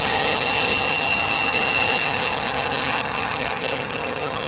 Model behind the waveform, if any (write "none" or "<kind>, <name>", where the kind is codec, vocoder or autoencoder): vocoder, HiFi-GAN